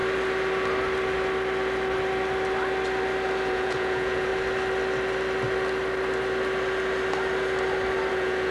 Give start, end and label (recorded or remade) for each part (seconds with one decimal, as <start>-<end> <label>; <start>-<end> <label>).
0.0-3.5 recorded; 3.5-4.3 remade; 4.3-8.1 recorded; 8.1-8.5 remade